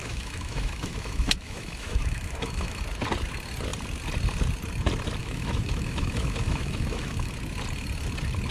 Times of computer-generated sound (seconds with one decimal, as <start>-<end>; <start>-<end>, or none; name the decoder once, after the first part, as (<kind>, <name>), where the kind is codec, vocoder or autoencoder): 0.0-2.8 (autoencoder, DAC-VAE); 5.2-7.3